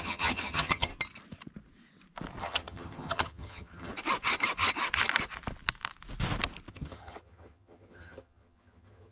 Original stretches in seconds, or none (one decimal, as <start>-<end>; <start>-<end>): 0.9-2.4; 3.9-6.7